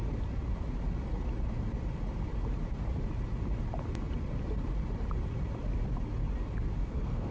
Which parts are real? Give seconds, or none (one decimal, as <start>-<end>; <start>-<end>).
0.0-6.8